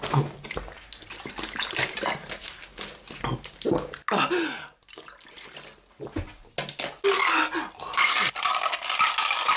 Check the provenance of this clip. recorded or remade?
recorded